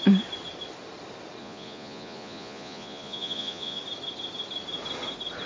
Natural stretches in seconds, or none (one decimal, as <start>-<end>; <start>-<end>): 0.0-1.4; 3.8-5.5